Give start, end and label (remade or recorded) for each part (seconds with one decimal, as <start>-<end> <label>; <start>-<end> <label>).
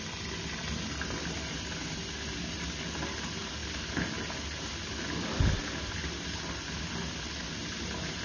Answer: 0.0-8.2 recorded